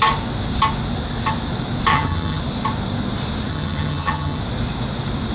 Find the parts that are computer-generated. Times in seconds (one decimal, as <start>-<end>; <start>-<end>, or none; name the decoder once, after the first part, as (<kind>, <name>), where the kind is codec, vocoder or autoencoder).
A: 1.9-2.4 (vocoder, HiFi-GAN); 3.5-4.4